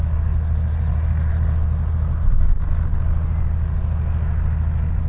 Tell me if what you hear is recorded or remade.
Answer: recorded